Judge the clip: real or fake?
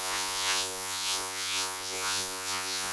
fake